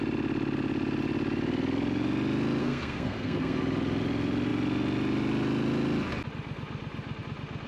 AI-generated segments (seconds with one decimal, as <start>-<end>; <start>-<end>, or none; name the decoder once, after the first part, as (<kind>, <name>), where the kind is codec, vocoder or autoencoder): 2.6-3.6 (codec, SNAC)